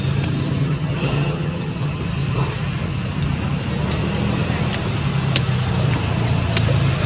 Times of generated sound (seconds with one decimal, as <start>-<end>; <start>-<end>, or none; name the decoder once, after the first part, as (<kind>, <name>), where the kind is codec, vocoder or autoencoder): 0.6-2.0 (vocoder, HiFi-GAN)